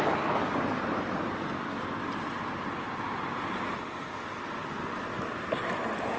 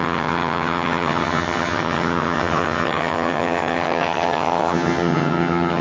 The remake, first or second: second